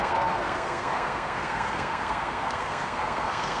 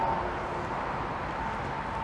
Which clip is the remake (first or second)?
first